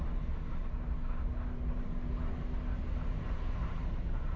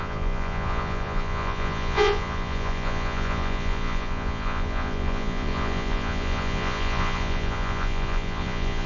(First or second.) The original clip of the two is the first